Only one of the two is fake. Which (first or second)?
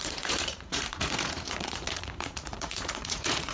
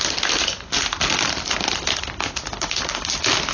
first